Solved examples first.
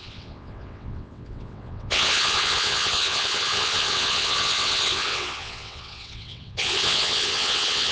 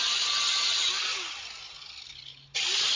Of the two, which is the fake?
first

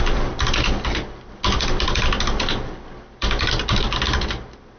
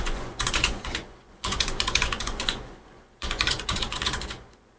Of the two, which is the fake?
second